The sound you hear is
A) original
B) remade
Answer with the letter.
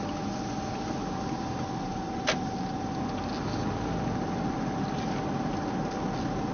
A